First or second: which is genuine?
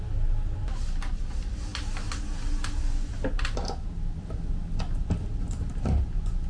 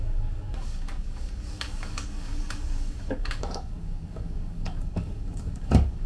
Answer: first